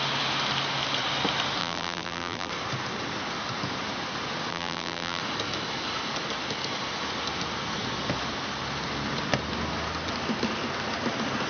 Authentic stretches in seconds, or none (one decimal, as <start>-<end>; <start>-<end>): 0.0-1.6; 2.5-4.5; 5.2-11.5